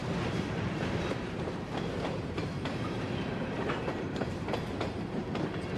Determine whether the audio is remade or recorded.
remade